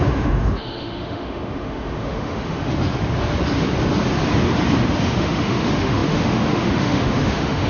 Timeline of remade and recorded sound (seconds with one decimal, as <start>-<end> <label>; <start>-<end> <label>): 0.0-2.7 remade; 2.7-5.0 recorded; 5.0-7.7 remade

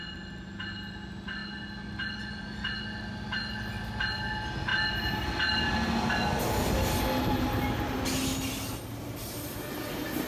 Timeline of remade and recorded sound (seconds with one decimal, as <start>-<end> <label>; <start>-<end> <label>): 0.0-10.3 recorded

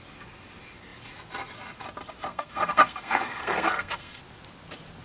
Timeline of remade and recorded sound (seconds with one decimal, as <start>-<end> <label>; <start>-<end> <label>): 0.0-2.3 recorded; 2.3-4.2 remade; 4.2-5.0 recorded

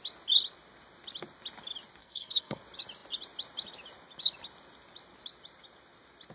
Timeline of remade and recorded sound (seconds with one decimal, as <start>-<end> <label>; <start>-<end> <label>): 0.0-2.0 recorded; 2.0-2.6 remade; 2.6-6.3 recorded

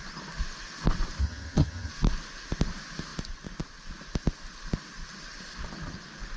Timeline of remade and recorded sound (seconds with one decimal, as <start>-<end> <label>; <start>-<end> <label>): 0.0-1.2 recorded; 1.2-1.9 remade; 1.9-6.4 recorded